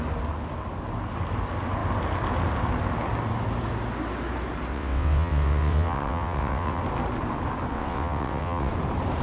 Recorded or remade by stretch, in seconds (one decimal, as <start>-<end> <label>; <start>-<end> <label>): 0.0-4.7 recorded; 4.7-6.8 remade; 6.8-7.7 recorded; 7.7-8.7 remade; 8.7-9.2 recorded